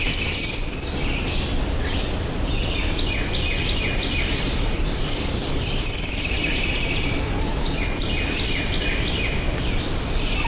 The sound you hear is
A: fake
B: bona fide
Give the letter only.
B